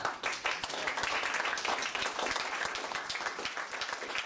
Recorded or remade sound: recorded